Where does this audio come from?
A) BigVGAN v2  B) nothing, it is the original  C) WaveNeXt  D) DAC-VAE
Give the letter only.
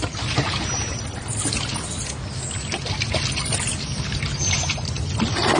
B